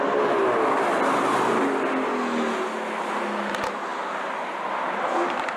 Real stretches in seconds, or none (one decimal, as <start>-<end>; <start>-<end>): 0.0-5.6